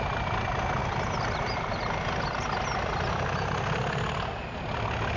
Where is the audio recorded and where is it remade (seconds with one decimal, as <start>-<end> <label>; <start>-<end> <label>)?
0.0-5.2 recorded